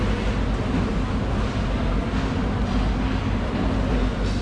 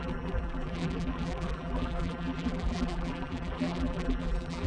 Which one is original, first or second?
first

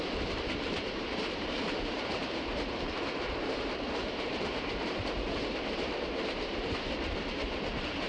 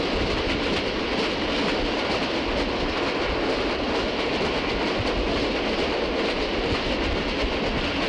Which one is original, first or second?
second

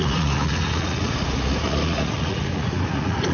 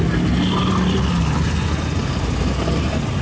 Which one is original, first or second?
second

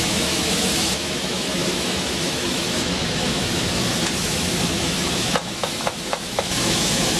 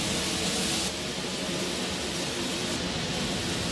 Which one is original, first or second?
second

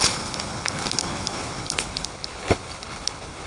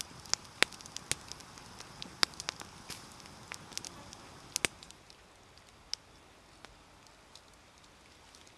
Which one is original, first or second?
second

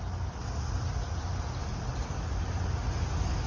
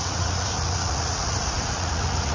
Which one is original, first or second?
first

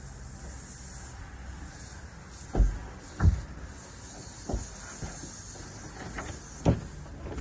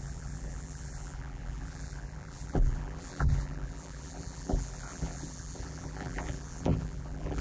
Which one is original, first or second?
first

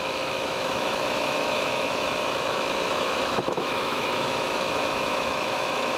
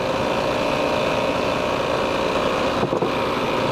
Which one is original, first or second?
second